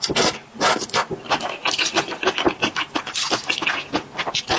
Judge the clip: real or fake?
real